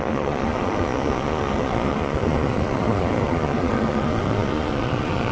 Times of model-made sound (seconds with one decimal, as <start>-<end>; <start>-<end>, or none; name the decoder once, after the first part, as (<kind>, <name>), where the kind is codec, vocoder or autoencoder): 0.0-5.3 (vocoder, Vocos)